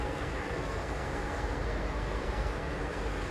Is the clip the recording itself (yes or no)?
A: no